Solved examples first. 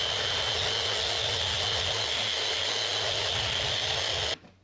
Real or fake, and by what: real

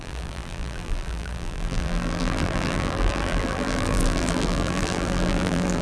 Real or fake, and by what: fake, vocoder, BigVGAN v2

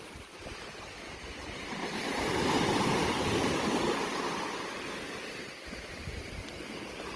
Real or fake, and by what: fake, vocoder, BigVGAN v2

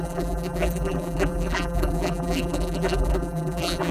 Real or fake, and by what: fake, vocoder, BigVGAN v2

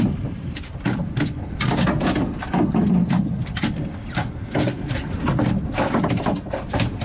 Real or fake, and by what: real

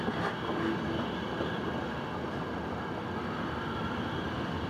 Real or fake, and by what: real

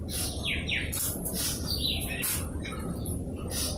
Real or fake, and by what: real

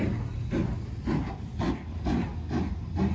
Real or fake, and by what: real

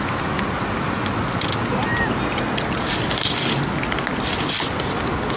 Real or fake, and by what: real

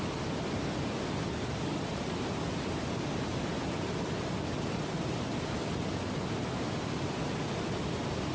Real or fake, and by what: real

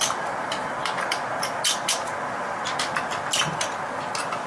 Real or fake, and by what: real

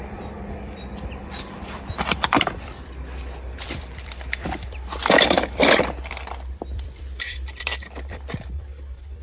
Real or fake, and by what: fake, vocoder, BigVGAN v2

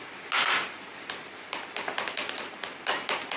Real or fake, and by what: real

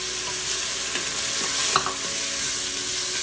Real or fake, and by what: real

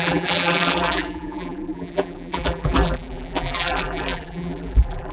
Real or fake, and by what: fake, vocoder, BigVGAN v2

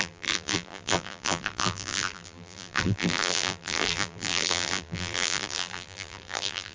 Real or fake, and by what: fake, vocoder, BigVGAN v2